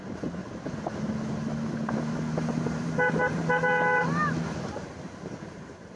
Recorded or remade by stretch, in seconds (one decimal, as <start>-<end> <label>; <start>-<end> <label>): 0.0-0.4 remade; 0.4-1.8 recorded; 1.8-6.0 remade